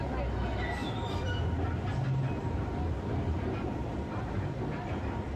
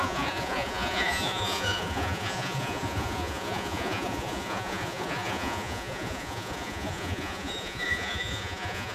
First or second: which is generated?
second